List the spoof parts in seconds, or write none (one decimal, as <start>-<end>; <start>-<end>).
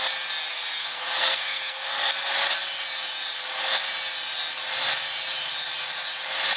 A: 0.8-2.1